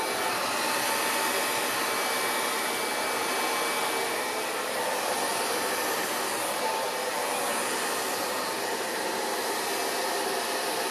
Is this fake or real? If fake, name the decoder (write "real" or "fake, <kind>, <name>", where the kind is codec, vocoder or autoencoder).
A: real